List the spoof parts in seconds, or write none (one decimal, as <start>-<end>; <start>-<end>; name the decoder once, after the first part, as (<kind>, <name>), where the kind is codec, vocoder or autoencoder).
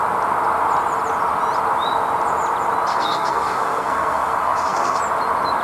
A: 2.9-5.0 (codec, SNAC)